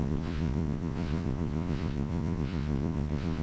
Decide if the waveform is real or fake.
fake